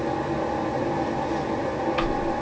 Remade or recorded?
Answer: recorded